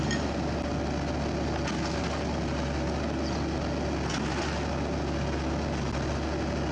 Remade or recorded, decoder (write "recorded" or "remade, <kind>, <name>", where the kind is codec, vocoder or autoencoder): recorded